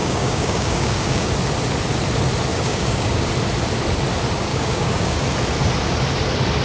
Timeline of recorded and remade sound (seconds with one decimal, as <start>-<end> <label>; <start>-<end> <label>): 0.0-1.3 remade; 1.3-2.5 recorded; 2.5-3.3 remade; 3.3-4.5 recorded; 4.5-5.2 remade; 5.2-6.6 recorded